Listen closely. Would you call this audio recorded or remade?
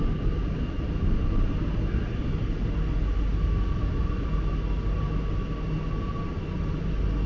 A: recorded